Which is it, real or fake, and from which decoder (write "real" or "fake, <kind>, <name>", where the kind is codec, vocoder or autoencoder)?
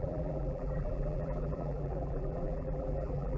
fake, vocoder, BigVGAN v2